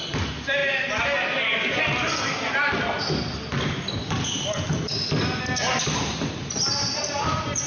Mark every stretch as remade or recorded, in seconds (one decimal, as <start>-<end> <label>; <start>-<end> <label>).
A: 0.0-7.7 recorded

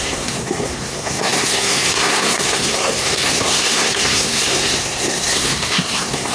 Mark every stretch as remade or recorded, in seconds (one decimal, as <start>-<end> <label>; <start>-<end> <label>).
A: 0.0-6.3 remade

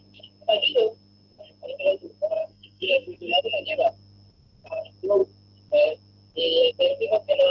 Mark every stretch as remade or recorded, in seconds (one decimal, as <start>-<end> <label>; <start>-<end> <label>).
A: 0.0-2.4 recorded; 2.4-3.4 remade; 3.4-7.5 recorded

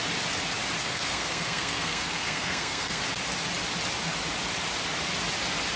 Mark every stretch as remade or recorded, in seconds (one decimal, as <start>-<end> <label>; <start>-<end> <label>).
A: 0.0-0.8 recorded; 0.8-3.0 remade; 3.0-5.8 recorded

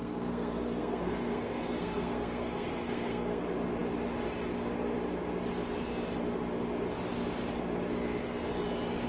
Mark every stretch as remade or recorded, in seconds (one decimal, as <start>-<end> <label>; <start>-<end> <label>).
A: 0.0-3.4 remade; 3.4-9.1 recorded

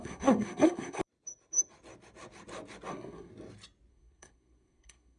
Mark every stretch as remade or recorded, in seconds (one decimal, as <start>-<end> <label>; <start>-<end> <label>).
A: 0.0-1.0 remade; 1.0-2.9 recorded; 2.9-3.3 remade; 3.3-3.9 recorded; 3.9-5.2 remade